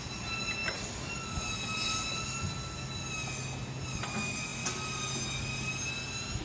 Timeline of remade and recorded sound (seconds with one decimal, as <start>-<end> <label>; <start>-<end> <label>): 0.0-6.4 recorded